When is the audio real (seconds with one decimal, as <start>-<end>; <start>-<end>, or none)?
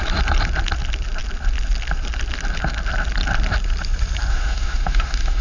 0.0-4.3